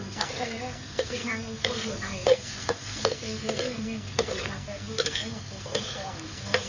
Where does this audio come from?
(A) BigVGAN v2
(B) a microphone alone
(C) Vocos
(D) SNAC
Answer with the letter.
D